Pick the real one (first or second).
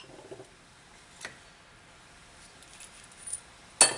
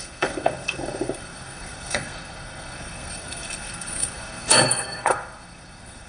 first